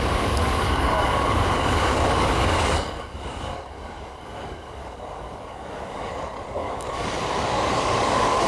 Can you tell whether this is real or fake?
fake